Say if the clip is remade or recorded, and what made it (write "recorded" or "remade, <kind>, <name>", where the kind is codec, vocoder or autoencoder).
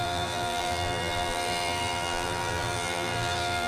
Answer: remade, vocoder, BigVGAN v2